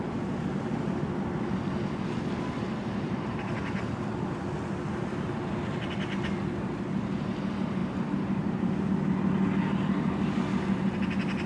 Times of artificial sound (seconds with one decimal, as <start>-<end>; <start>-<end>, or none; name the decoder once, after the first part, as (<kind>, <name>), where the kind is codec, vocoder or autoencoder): 2.8-3.5 (vocoder, BigVGAN v2); 7.8-8.8